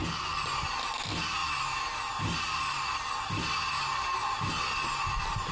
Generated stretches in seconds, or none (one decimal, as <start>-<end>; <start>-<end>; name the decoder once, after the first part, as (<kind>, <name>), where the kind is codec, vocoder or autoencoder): none